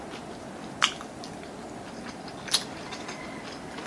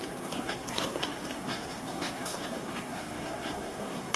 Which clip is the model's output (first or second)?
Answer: second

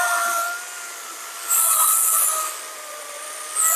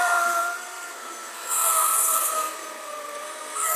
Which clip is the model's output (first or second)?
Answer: second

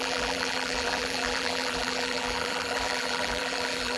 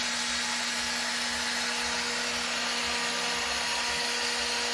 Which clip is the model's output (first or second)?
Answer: first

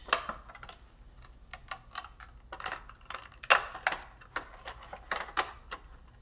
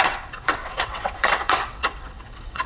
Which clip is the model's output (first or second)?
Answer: second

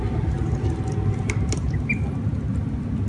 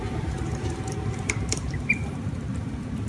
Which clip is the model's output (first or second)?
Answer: second